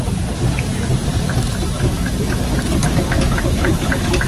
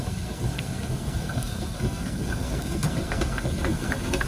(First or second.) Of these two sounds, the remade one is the second